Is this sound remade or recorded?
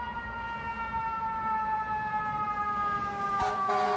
remade